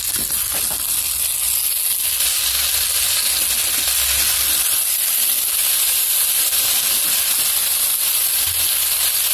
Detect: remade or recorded recorded